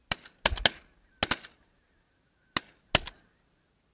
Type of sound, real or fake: real